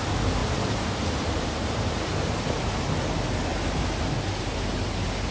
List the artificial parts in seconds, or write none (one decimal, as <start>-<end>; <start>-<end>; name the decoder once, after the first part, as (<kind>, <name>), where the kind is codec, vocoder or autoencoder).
0.4-2.3 (vocoder, BigVGAN v2)